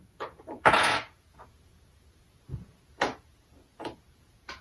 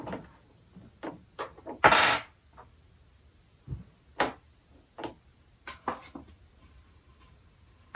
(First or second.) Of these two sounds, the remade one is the first